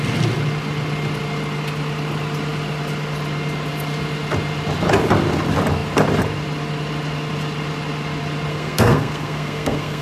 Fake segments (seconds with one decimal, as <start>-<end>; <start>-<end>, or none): 8.5-10.0